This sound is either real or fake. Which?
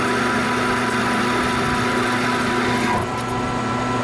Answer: real